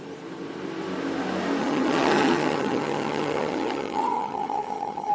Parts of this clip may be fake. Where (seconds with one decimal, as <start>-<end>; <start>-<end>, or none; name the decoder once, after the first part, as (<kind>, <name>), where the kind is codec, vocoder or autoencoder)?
1.6-5.1 (vocoder, HiFi-GAN)